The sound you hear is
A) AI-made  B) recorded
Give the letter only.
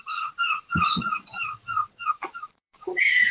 A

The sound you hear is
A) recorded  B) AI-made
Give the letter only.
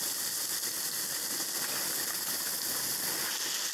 A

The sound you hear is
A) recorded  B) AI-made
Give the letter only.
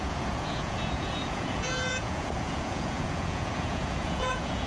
B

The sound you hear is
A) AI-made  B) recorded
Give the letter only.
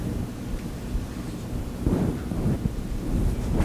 B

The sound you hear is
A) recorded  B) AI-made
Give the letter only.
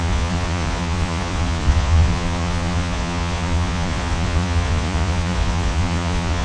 B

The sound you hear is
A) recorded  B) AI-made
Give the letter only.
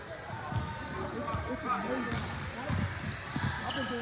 A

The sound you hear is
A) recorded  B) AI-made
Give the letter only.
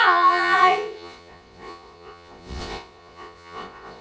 B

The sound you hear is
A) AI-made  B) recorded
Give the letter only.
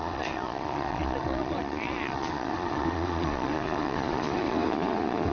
A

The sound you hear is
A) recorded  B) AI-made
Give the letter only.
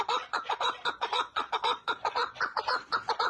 B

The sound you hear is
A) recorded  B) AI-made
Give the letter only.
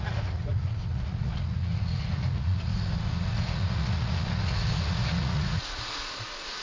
B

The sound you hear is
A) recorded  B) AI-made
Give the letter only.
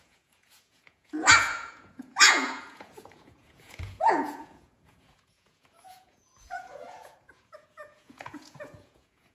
B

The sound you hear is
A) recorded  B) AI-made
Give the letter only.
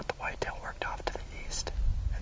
A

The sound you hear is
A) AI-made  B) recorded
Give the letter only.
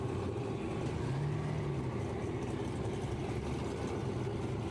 B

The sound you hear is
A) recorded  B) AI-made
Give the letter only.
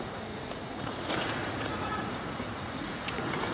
B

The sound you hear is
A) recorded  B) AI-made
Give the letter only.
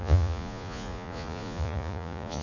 B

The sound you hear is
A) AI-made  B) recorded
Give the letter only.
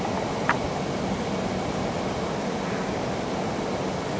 B